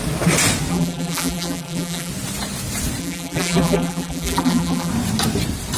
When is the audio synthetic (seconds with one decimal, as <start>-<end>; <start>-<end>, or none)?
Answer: 0.7-2.1; 3.0-4.9